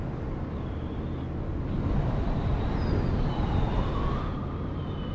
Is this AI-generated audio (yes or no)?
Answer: no